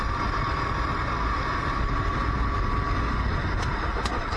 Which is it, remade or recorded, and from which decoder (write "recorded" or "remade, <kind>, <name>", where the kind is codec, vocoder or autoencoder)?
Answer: recorded